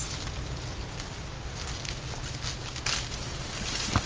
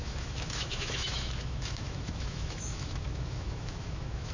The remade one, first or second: second